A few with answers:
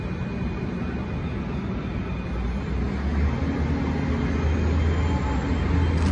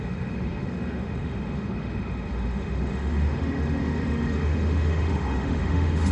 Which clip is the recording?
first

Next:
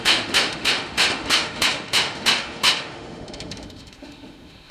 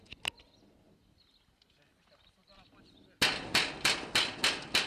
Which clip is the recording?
second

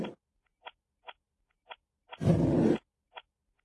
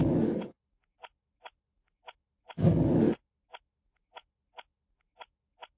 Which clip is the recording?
first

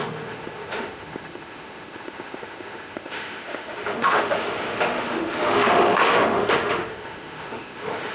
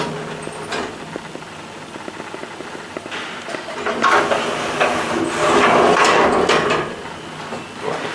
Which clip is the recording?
second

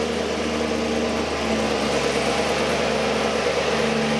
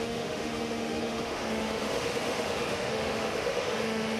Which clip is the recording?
first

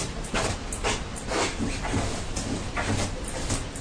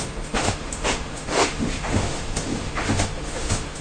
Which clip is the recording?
first